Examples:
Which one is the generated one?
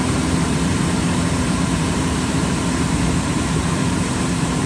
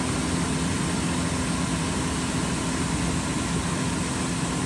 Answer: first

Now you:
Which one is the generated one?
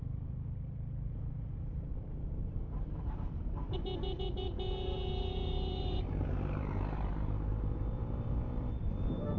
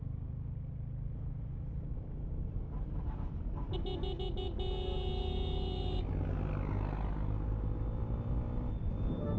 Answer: first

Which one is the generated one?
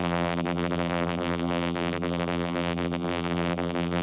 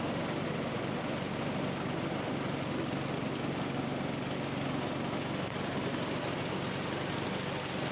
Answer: first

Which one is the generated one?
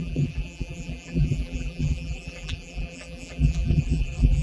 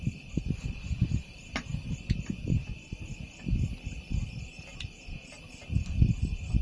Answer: first